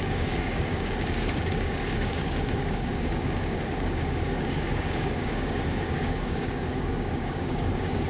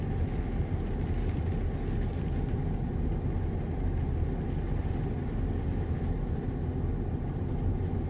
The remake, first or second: first